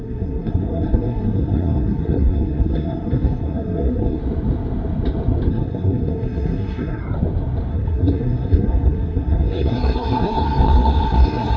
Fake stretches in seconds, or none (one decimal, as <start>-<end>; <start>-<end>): 0.0-4.2; 5.5-7.0; 7.7-11.6

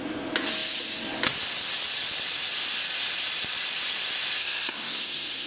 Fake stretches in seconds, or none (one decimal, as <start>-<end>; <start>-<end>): 4.4-5.5